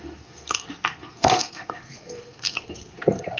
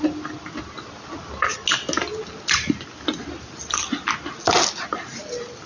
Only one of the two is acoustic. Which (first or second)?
second